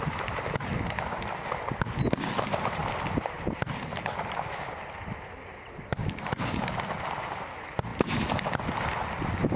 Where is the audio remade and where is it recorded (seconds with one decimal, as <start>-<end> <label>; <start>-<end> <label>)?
0.0-9.6 recorded